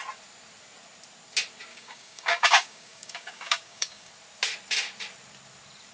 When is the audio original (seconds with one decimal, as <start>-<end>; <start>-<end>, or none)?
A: 0.0-1.7; 4.1-5.9